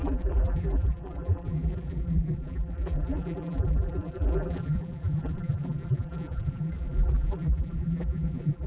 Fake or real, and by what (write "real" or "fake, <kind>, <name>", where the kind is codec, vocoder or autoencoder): fake, vocoder, BigVGAN v2